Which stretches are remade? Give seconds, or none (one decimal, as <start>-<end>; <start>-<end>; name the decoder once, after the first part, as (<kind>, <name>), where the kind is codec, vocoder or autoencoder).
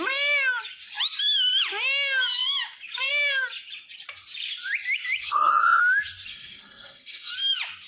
5.2-5.8 (codec, SNAC); 6.3-7.3